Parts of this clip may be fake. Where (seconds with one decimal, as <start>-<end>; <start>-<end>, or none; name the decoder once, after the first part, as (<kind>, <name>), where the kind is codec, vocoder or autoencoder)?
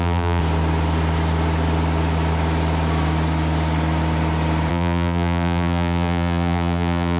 0.0-0.4 (vocoder, BigVGAN v2); 4.7-7.2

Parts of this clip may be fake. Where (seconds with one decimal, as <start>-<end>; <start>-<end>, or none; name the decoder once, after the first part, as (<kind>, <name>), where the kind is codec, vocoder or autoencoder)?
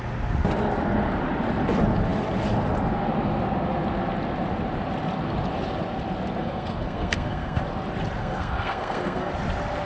6.4-7.6 (codec, SNAC); 8.2-9.3